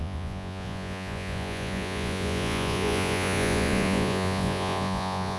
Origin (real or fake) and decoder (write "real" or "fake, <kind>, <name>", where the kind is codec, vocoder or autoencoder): fake, vocoder, Vocos